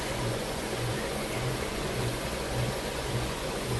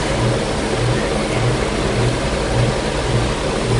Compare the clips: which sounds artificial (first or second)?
first